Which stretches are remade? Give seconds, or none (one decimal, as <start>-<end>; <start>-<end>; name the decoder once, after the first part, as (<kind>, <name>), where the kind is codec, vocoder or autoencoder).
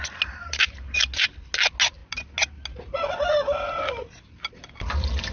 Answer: 0.4-1.0 (vocoder, BigVGAN v2)